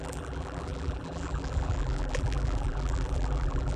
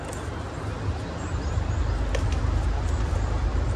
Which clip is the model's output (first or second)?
first